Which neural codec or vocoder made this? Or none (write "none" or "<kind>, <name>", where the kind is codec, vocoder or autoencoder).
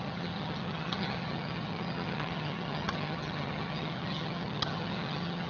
vocoder, HiFi-GAN